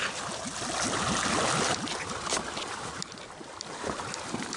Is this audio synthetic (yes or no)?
no